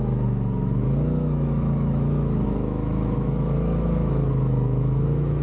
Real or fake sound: fake